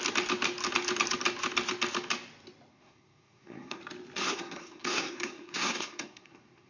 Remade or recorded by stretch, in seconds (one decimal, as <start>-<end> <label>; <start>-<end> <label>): 0.0-2.7 recorded; 2.7-3.8 remade; 3.8-4.2 recorded; 4.2-6.7 remade